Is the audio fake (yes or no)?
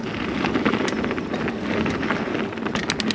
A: no